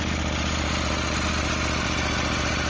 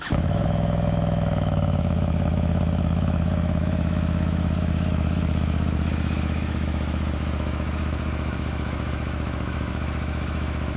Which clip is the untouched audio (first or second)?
first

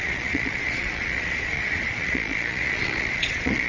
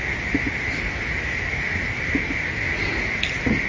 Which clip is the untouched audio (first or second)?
second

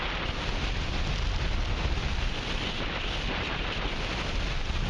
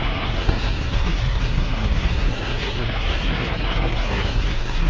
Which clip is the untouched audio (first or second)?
first